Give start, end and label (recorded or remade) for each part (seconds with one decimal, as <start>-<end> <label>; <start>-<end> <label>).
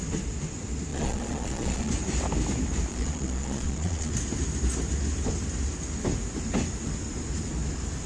0.0-0.9 recorded; 0.9-1.9 remade; 1.9-2.9 recorded; 2.9-4.1 remade; 4.1-8.1 recorded